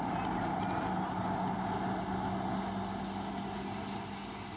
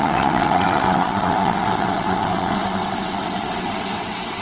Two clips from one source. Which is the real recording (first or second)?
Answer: first